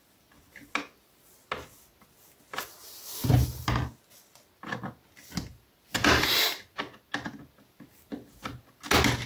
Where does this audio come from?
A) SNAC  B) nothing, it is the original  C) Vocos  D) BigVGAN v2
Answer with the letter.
B